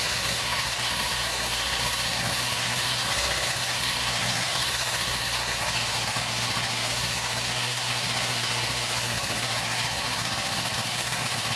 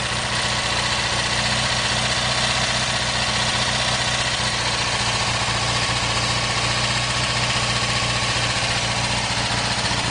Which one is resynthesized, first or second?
first